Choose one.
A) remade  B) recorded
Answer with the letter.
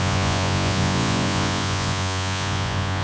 A